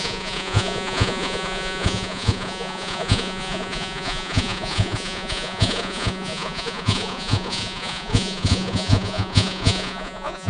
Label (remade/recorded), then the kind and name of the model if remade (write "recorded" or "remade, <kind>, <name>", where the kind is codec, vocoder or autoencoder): remade, vocoder, Vocos